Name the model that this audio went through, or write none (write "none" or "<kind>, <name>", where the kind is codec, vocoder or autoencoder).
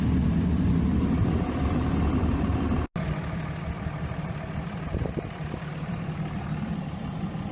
none